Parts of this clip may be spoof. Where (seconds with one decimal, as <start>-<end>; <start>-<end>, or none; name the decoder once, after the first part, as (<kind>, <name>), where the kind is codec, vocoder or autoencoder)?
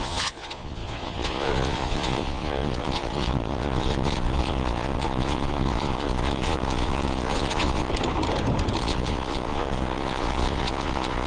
0.0-7.9 (vocoder, Vocos); 8.8-11.3